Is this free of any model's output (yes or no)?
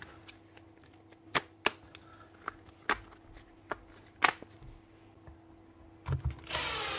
yes